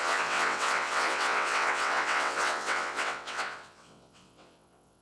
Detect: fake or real fake